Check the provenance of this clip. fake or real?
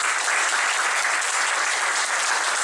real